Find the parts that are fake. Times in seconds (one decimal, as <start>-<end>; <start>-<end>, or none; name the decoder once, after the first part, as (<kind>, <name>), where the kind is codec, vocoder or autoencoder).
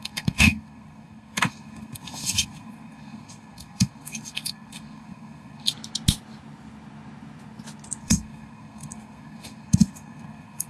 0.0-5.7 (codec, SNAC); 8.0-10.7